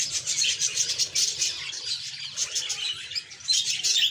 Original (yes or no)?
yes